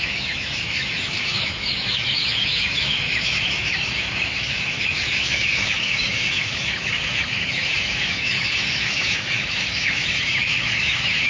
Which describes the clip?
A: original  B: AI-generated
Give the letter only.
B